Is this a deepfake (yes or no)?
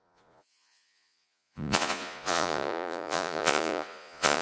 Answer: yes